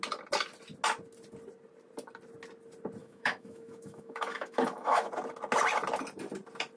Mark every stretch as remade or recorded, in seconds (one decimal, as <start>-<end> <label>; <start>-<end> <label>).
0.0-3.0 recorded; 3.0-5.1 remade; 5.1-6.8 recorded